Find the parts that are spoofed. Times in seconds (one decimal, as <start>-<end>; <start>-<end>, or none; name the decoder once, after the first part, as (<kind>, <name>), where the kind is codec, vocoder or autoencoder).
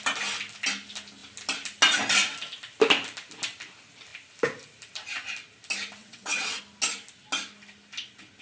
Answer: 6.0-6.6 (vocoder, WaveNeXt)